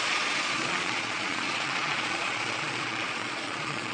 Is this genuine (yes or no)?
no